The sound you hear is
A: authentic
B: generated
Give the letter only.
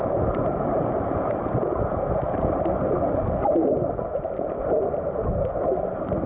A